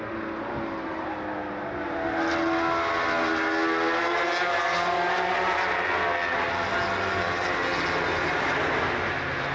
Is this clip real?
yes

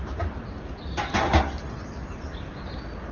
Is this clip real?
yes